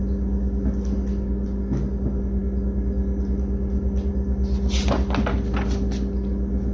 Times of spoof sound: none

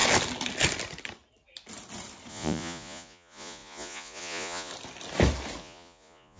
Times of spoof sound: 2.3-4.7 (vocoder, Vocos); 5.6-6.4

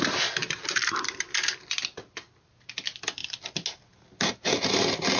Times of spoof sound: none